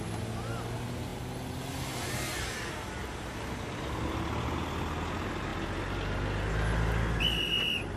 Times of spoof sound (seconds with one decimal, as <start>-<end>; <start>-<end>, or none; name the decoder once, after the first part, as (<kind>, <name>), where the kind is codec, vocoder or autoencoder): none